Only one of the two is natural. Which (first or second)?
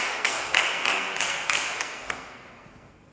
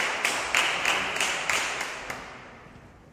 second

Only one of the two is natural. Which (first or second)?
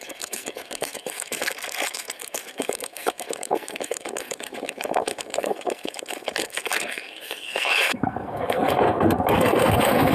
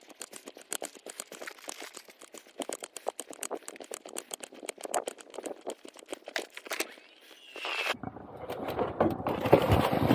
second